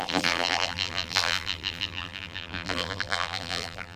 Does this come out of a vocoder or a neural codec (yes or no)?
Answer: yes